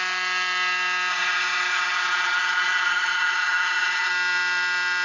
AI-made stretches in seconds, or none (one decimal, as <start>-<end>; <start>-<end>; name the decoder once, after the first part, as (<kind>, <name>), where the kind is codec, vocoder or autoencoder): 1.1-4.1 (codec, HILCodec)